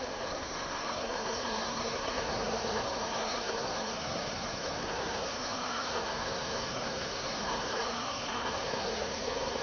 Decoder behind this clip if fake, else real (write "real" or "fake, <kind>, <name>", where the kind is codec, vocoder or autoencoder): fake, codec, SNAC